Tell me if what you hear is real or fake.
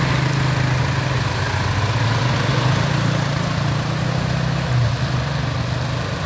real